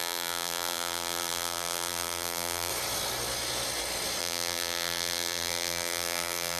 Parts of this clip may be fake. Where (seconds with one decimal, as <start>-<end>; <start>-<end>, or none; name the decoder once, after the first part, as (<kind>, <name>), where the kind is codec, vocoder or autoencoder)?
0.0-2.7 (vocoder, BigVGAN v2); 4.2-6.6